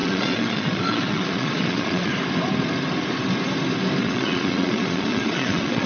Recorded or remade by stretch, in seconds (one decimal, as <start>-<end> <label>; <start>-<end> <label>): 0.0-2.1 remade; 2.1-4.0 recorded; 4.0-5.9 remade